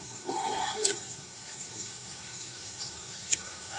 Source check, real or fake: fake